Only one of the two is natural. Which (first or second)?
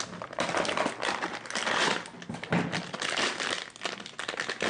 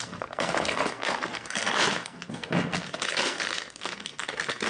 first